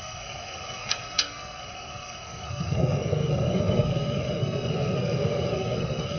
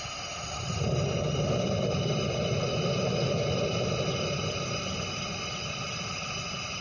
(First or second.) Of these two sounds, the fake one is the first